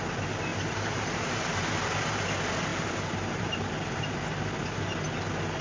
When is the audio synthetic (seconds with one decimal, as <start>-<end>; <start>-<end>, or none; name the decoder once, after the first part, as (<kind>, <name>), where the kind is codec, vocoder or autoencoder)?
0.5-1.6 (vocoder, BigVGAN v2); 2.7-4.4